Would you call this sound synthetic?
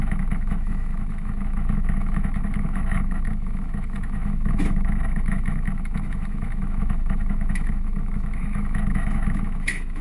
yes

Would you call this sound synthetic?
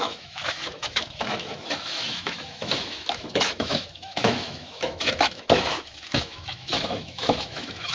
yes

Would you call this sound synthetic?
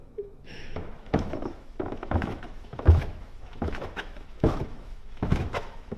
yes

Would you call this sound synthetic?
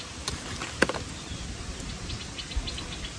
no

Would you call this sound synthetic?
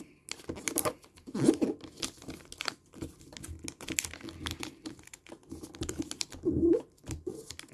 no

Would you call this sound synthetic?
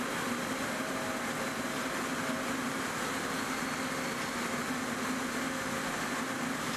no